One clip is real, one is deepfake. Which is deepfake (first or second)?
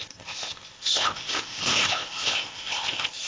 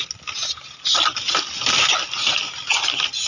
first